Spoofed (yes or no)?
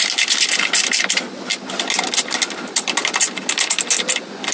no